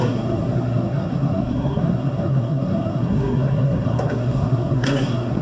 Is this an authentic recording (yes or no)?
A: no